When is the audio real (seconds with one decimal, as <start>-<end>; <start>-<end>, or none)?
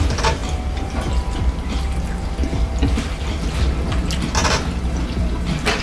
0.0-5.8